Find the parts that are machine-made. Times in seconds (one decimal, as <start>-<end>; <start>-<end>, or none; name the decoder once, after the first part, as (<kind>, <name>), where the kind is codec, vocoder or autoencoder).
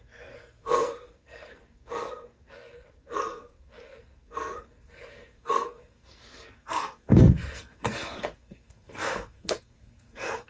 0.0-10.5 (codec, SNAC)